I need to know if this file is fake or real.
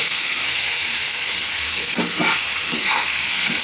fake